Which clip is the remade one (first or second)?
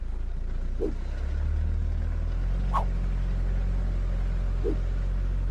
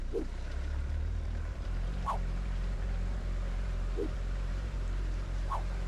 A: second